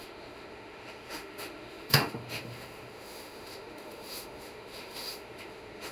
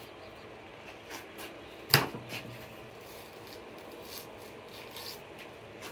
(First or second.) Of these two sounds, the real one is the second